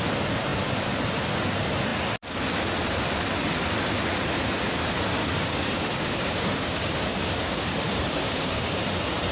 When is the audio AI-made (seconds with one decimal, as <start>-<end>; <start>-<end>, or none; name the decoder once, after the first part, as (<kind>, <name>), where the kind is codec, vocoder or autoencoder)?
5.2-8.8 (codec, DAC)